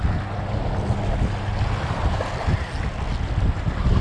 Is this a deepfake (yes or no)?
no